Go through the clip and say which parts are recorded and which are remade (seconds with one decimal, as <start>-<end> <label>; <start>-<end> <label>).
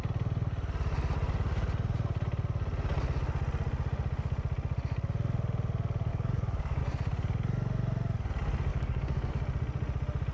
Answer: 0.0-6.1 recorded; 6.1-6.8 remade; 6.8-8.7 recorded; 8.7-9.3 remade; 9.3-10.3 recorded